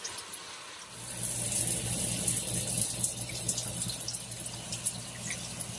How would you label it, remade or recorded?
recorded